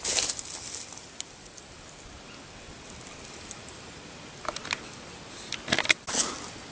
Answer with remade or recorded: recorded